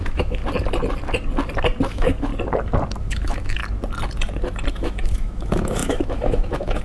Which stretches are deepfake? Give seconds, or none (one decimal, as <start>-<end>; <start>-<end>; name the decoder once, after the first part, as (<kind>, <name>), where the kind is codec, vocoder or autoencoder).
0.0-0.4 (autoencoder, DAC-VAE); 1.9-2.3; 3.0-3.6; 4.7-6.8